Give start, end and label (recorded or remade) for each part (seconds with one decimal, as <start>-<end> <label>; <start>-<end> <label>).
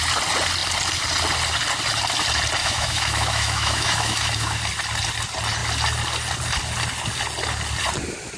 0.0-2.6 recorded; 2.6-4.6 remade; 4.6-8.4 recorded